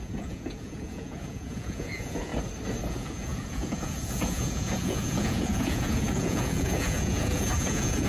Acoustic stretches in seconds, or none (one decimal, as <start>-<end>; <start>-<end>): 2.3-2.9